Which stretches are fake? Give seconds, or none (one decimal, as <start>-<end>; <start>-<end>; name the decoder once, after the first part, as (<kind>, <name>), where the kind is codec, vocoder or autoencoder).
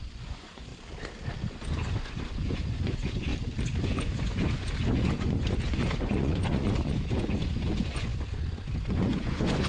0.0-0.7 (vocoder, Vocos); 1.4-3.3; 3.8-9.7